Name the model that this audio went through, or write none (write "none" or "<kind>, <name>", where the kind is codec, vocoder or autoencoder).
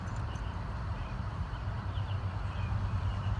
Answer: vocoder, BigVGAN v2